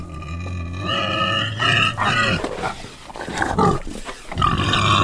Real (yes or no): yes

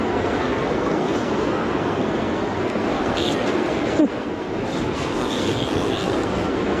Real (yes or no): no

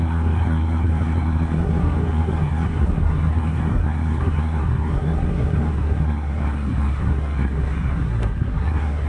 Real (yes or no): no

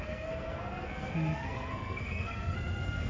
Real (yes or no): no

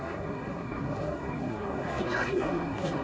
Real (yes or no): no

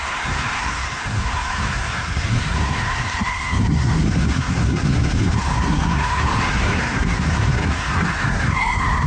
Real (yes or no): no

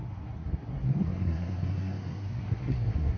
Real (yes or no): no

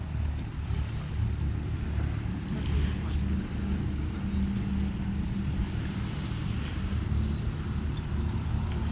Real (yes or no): yes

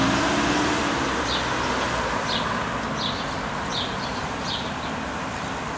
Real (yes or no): yes